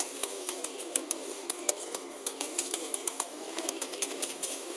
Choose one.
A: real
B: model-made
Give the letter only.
B